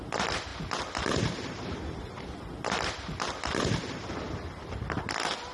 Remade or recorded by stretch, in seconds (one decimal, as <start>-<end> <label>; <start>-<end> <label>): 0.0-5.5 recorded